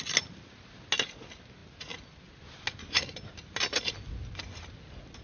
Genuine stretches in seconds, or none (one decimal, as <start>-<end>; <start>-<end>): 0.0-5.2